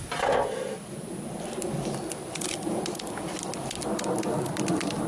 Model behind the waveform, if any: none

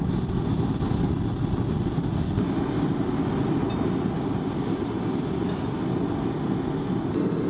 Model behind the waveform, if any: none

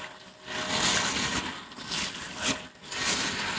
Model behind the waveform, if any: none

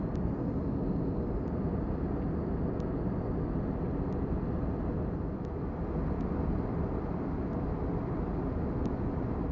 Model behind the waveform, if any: none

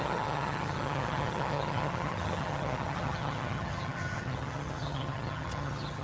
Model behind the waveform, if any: vocoder, HiFi-GAN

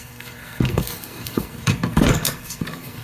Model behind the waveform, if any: codec, SNAC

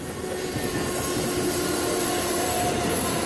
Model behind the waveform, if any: none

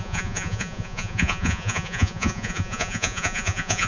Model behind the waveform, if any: vocoder, Vocos